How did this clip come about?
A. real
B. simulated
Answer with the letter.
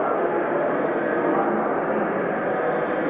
A